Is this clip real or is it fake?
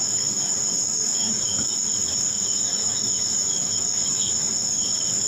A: fake